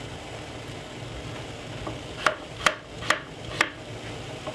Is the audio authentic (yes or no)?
yes